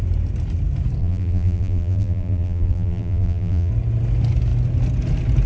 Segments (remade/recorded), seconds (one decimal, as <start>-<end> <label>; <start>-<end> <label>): 0.0-1.0 recorded; 1.0-3.7 remade; 3.7-5.5 recorded